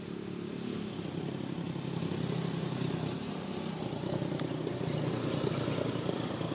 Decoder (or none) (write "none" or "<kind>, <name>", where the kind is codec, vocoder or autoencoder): none